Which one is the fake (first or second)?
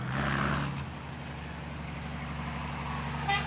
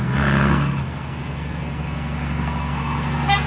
second